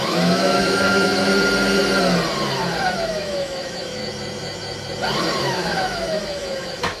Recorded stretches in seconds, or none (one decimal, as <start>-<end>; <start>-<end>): 1.3-2.9; 4.0-5.4